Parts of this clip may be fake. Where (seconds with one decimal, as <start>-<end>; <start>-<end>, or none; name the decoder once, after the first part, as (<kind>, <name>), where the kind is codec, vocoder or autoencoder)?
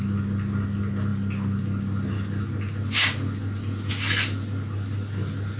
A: none